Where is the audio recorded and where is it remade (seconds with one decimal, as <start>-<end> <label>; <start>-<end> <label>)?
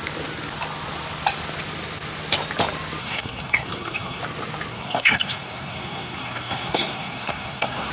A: 0.0-3.0 recorded; 3.0-4.2 remade; 4.2-4.7 recorded; 4.7-7.9 remade